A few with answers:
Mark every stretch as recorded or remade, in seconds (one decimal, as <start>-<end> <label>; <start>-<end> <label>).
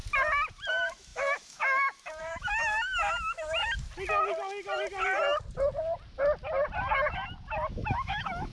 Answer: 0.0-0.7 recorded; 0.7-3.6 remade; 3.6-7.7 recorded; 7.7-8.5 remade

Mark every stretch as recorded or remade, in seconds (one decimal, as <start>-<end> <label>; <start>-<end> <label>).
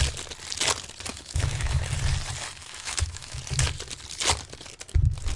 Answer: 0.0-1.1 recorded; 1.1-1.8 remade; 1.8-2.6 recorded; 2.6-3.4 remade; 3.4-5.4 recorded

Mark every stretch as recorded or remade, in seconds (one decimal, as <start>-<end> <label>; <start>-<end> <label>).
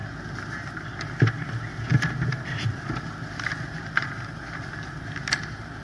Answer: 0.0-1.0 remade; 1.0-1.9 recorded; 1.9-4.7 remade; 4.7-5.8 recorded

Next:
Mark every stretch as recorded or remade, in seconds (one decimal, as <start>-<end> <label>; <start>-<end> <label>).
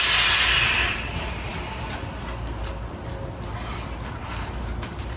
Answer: 0.0-5.2 recorded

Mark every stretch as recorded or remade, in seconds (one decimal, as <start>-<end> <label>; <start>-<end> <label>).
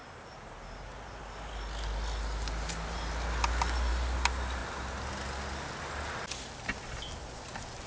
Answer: 0.0-7.9 recorded